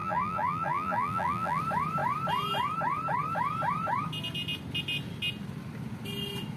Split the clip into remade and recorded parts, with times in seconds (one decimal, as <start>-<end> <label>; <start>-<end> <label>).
0.0-1.6 remade; 1.6-6.6 recorded